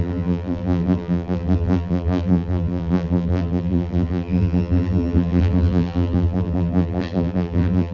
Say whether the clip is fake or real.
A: fake